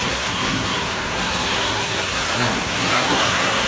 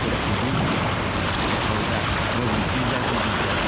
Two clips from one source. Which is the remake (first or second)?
first